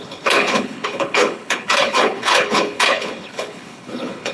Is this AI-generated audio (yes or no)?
yes